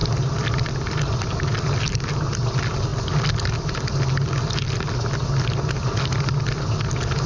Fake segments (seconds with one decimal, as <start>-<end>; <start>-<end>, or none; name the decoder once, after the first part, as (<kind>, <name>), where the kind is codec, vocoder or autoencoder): none